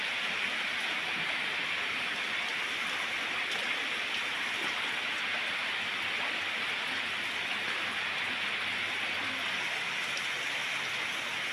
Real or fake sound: real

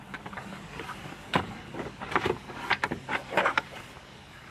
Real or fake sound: fake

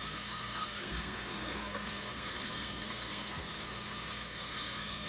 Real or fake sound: fake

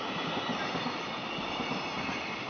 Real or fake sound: real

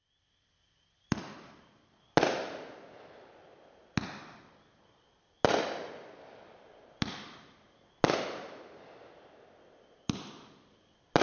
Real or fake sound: real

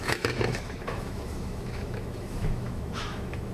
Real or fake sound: fake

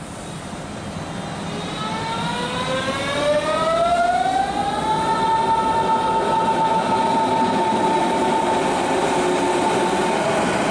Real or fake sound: real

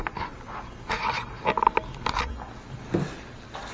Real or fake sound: real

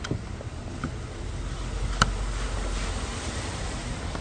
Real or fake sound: real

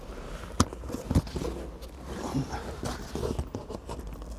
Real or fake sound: real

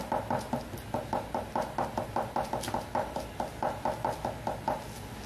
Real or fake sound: real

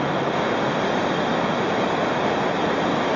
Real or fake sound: real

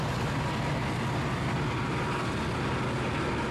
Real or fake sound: real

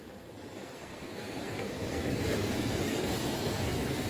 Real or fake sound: fake